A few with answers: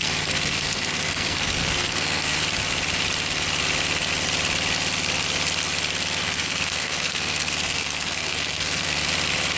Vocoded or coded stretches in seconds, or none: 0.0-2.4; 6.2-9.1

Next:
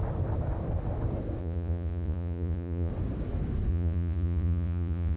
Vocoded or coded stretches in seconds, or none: 1.4-2.9; 3.7-5.2

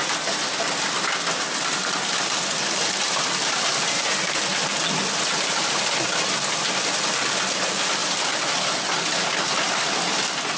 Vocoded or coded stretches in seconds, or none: 4.5-5.8; 8.0-8.6

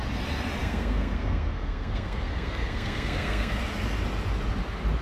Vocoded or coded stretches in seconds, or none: 0.6-3.6